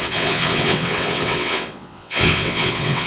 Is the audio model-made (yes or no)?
yes